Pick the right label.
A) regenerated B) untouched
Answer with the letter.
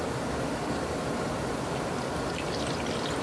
A